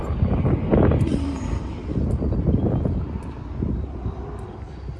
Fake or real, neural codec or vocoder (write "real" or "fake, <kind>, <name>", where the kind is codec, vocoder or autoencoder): real